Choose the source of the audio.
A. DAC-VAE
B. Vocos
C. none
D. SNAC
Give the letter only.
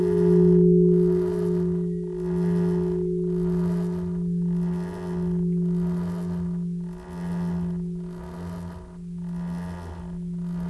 C